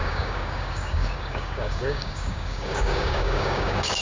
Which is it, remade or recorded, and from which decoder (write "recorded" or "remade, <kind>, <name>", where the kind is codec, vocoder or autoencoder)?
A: remade, codec, DAC